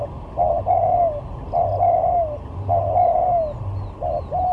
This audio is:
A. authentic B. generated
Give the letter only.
A